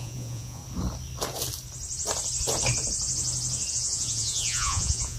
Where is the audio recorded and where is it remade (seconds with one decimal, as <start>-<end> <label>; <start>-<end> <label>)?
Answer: 0.0-0.6 remade; 0.6-3.7 recorded; 3.7-5.2 remade